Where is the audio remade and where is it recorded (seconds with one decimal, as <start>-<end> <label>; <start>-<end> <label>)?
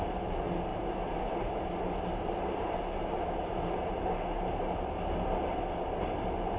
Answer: 0.0-6.6 recorded